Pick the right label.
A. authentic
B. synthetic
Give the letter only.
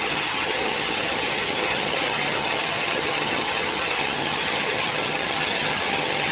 B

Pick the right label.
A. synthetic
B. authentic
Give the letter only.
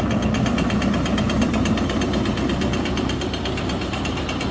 B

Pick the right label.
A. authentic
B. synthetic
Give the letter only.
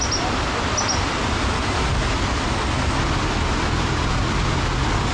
A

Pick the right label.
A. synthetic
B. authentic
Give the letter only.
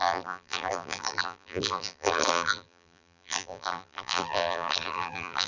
A